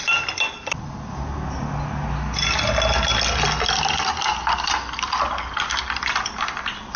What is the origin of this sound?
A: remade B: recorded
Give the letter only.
B